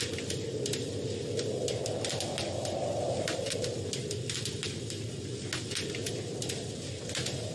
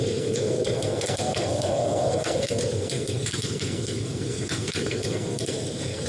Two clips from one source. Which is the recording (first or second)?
first